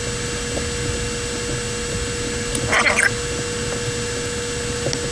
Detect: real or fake real